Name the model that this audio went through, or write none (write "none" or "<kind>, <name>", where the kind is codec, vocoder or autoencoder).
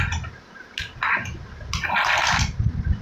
none